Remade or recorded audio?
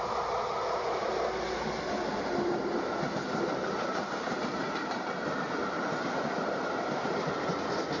recorded